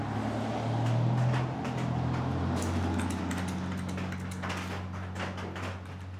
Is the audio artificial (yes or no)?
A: no